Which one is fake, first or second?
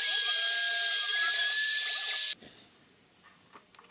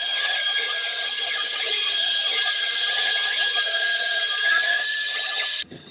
second